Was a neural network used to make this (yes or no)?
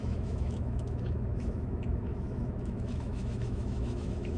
yes